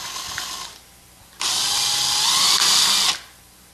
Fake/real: real